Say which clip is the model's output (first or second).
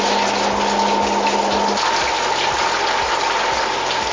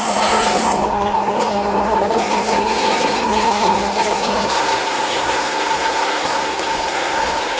second